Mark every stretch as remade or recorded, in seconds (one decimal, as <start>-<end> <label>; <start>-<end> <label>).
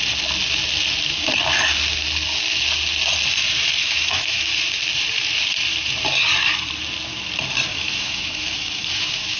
0.0-3.8 recorded; 3.8-4.5 remade; 4.5-7.7 recorded; 7.7-9.4 remade